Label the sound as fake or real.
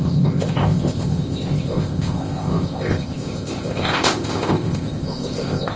fake